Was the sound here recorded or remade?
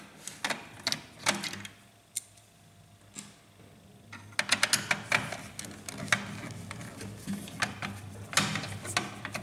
recorded